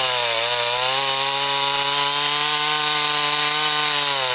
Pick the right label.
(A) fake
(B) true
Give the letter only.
B